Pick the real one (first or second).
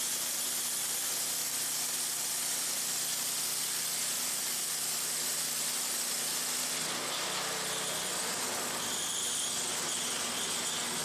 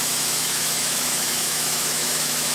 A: first